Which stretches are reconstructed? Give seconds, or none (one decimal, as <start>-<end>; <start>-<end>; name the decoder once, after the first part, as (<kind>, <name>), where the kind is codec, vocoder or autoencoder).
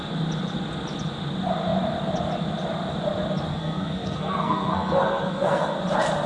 3.5-5.8 (codec, SNAC)